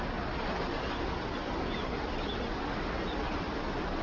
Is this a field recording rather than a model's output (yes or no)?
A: yes